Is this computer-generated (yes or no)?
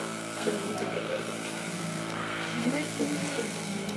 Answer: yes